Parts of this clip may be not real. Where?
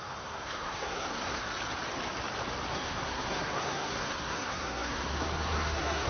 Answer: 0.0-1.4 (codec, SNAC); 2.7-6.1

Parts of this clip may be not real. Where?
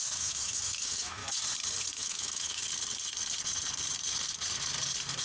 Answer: 0.0-1.2 (autoencoder, DAC-VAE); 1.9-2.6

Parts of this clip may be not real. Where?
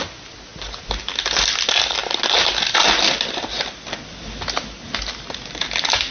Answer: none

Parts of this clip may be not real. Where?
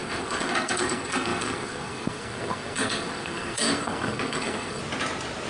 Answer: 0.0-4.8 (codec, SNAC)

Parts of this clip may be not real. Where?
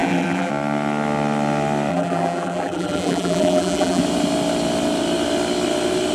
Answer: 0.0-0.5 (vocoder, BigVGAN v2); 1.9-4.0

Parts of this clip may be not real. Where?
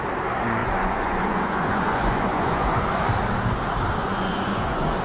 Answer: 0.6-2.8 (vocoder, Vocos); 4.0-5.0